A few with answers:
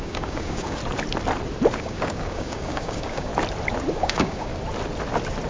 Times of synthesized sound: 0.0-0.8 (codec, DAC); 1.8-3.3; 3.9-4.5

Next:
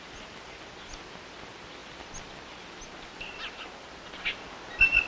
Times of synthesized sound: none